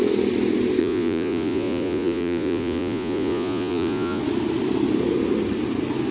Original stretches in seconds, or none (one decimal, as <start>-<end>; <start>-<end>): 0.0-0.8; 4.2-6.1